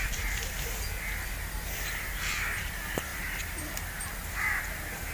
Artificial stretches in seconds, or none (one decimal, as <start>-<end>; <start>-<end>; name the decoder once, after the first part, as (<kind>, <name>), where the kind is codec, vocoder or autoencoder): 3.1-4.6 (vocoder, BigVGAN v2)